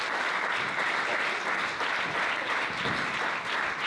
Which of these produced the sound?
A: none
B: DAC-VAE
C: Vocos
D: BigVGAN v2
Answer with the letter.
A